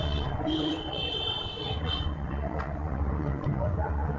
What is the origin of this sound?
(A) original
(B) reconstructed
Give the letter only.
B